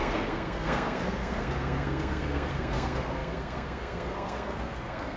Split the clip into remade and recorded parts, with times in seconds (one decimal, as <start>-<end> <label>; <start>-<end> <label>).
0.0-5.2 remade